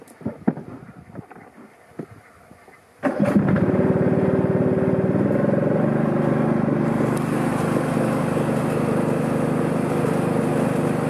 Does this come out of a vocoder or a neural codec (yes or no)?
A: no